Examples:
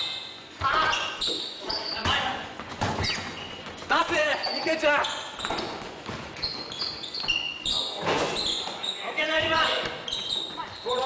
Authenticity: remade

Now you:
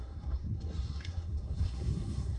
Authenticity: remade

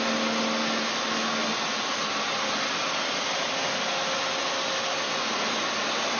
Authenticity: recorded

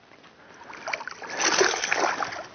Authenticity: recorded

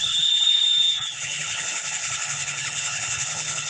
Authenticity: remade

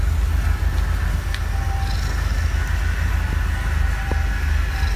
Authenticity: recorded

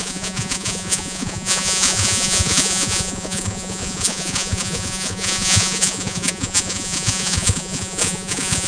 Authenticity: remade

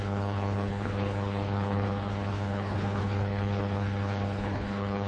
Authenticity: remade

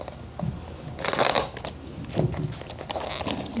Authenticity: recorded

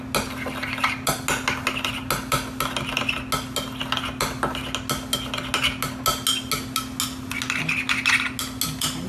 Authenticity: recorded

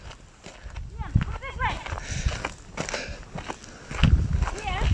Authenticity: recorded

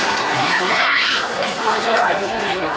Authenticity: remade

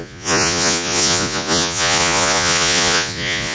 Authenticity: remade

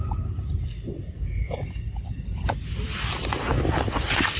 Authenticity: recorded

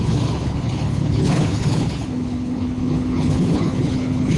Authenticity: remade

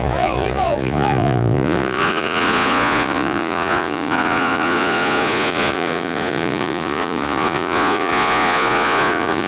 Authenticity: remade